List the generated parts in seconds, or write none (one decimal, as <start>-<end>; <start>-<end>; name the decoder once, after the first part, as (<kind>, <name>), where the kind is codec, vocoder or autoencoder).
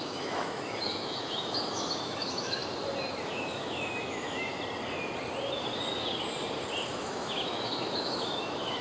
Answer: 0.0-2.6 (autoencoder, DAC-VAE); 3.1-4.5; 6.9-8.8